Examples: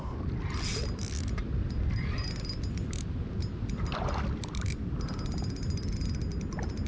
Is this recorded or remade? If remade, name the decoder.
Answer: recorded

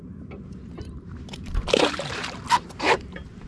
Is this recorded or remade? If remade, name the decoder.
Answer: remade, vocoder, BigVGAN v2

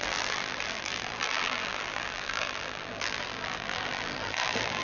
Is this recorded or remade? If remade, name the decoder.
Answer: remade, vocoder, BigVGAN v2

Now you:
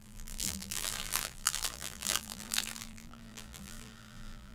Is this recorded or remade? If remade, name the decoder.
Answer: remade, vocoder, BigVGAN v2